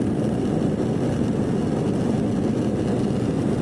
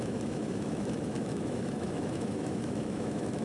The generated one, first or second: second